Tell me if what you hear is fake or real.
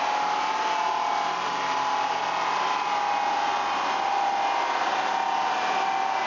real